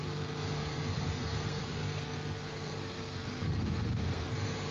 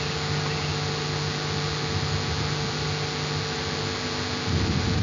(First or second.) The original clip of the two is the second